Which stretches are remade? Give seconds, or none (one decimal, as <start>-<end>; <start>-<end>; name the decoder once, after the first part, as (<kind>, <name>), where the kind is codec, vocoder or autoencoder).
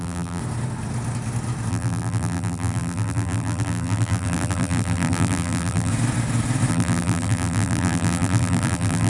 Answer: 0.0-0.4 (vocoder, BigVGAN v2); 1.7-5.9; 6.7-9.1